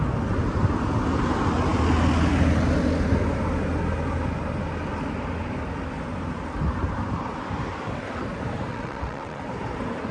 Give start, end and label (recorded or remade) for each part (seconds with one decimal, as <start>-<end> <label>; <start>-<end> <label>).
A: 0.0-8.7 recorded; 8.7-9.4 remade; 9.4-10.1 recorded